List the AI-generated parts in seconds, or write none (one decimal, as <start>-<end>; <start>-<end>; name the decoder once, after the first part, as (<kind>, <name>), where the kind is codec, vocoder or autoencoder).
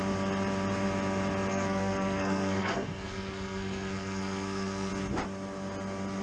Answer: 1.5-4.9 (codec, SNAC)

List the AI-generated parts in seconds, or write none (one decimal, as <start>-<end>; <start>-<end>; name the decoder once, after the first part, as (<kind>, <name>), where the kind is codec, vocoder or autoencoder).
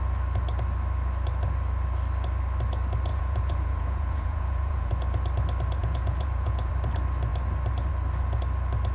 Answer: 3.1-4.9 (vocoder, Vocos); 5.8-6.7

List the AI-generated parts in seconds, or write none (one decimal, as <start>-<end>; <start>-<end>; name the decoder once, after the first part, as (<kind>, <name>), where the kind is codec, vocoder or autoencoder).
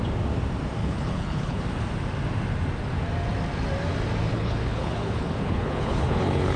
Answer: 0.8-1.6 (codec, HILCodec); 4.3-6.6